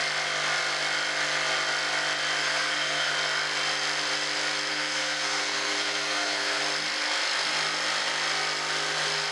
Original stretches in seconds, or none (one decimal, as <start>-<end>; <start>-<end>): 0.0-2.4; 3.1-4.7; 6.6-9.3